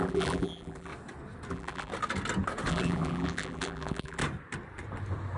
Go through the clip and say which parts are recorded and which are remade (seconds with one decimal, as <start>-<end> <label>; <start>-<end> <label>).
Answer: 0.0-0.9 remade; 0.9-1.5 recorded; 1.5-1.9 remade; 1.9-2.7 recorded; 2.7-4.2 remade; 4.2-5.4 recorded